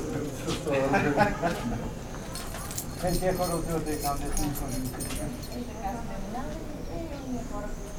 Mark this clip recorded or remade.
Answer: recorded